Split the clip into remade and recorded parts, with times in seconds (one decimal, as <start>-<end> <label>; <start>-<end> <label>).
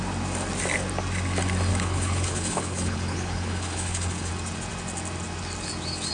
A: 0.0-1.7 recorded; 1.7-4.3 remade; 4.3-6.1 recorded